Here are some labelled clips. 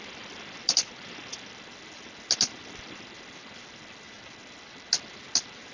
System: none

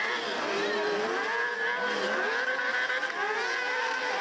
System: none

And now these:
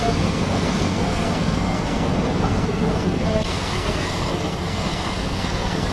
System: codec, SNAC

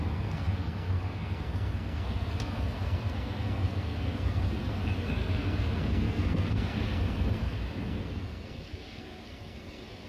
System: codec, SNAC